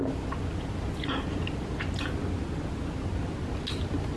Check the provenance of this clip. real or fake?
real